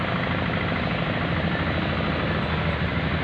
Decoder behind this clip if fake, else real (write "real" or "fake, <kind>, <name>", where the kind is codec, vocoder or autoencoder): real